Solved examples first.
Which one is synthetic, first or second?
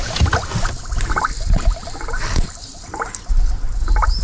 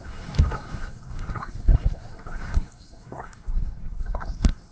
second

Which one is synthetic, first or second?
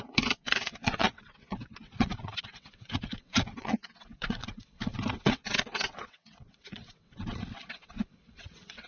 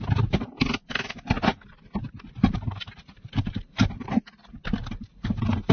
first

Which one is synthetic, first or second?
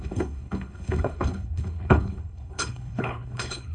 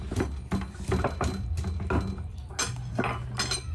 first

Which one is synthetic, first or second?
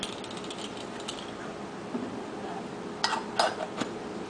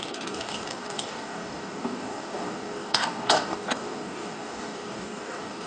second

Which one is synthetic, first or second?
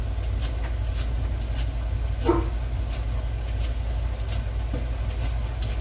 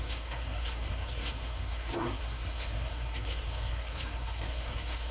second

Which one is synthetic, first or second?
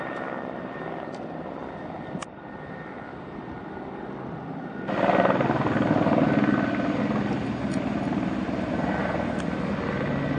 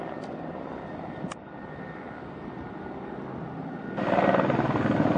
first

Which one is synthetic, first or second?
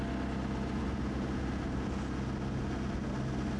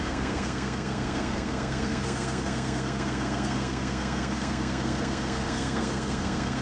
second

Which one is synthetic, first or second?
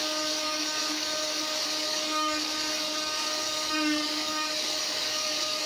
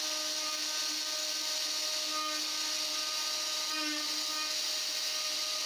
first